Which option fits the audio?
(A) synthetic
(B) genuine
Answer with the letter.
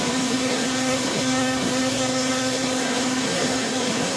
A